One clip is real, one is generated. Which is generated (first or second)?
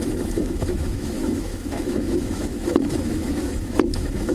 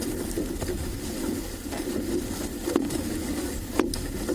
first